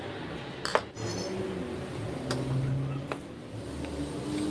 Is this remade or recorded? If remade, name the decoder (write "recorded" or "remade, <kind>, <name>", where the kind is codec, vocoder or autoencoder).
recorded